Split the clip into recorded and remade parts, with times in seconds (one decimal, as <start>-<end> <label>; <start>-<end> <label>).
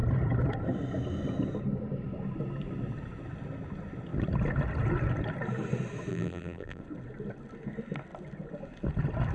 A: 0.0-6.1 recorded; 6.1-6.8 remade; 6.8-9.3 recorded